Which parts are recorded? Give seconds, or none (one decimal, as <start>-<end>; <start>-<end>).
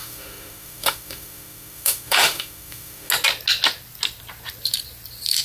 3.1-5.4